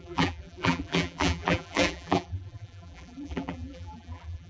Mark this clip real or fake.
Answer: fake